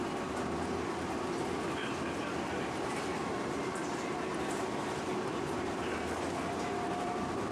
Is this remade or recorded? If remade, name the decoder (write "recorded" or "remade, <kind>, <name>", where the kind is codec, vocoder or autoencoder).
remade, vocoder, BigVGAN v2